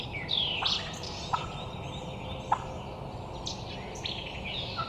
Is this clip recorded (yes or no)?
yes